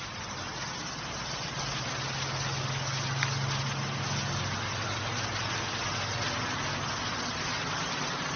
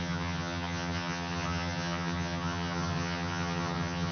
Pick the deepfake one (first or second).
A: second